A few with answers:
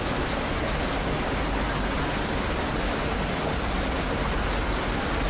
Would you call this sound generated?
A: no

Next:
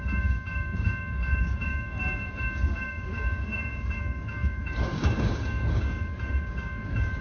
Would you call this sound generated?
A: yes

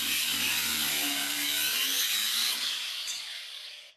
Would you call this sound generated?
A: yes